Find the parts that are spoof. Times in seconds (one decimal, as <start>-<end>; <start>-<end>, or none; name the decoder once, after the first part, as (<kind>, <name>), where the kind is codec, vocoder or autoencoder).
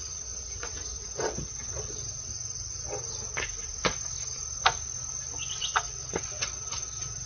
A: 0.0-2.3 (vocoder, WaveNeXt); 5.6-7.3